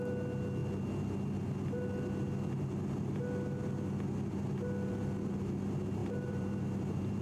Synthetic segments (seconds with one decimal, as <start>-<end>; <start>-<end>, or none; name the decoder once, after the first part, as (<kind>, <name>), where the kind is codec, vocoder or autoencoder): 6.0-7.2 (vocoder, BigVGAN v2)